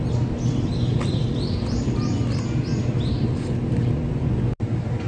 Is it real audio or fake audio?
real